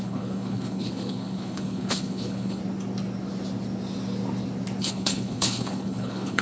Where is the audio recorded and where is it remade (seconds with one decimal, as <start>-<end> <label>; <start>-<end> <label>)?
0.0-2.6 remade; 2.6-4.8 recorded; 4.8-6.4 remade